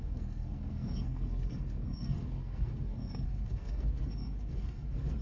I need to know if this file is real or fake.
fake